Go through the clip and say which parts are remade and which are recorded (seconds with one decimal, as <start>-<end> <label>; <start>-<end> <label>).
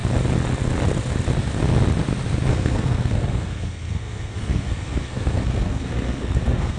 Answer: 0.0-2.5 recorded; 2.5-6.8 remade